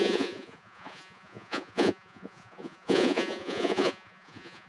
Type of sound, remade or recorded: remade